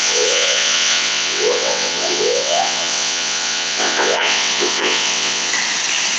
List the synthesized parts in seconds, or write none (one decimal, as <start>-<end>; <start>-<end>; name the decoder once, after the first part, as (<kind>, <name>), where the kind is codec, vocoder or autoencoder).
0.0-5.5 (vocoder, WaveNeXt)